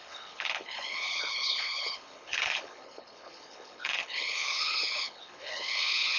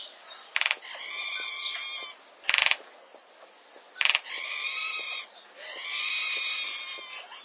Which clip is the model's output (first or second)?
first